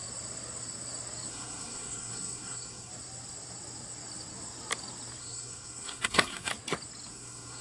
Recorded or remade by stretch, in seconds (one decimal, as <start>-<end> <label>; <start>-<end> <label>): 0.0-1.3 recorded; 1.3-2.9 remade; 2.9-5.2 recorded; 5.2-6.5 remade; 6.5-7.1 recorded; 7.1-7.6 remade